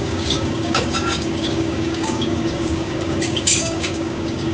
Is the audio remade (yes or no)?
yes